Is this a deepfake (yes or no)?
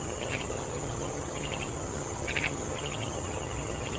yes